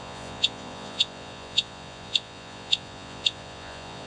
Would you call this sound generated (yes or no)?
yes